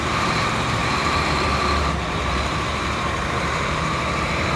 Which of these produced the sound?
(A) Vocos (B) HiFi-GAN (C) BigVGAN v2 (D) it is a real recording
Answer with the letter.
C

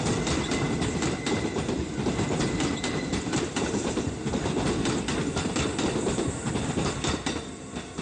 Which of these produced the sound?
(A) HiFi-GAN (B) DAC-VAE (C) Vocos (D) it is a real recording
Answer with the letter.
D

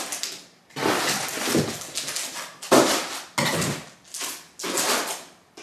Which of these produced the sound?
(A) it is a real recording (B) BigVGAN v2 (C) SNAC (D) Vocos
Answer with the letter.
A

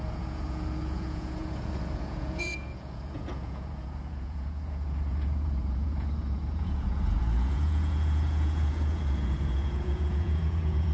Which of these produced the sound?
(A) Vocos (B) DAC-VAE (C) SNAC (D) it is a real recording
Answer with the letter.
A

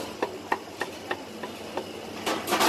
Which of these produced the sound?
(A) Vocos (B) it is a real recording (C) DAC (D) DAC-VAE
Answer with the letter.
B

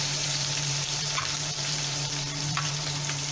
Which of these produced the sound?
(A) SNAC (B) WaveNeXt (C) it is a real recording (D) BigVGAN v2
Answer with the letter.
D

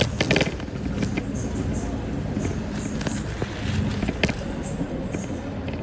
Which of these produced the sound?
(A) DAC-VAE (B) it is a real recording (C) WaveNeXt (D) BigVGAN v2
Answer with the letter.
B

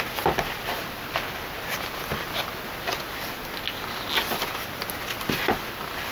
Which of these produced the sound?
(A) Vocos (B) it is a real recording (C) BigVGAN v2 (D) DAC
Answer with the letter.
B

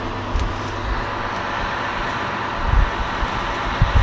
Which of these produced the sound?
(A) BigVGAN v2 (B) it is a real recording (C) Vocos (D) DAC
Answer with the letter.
B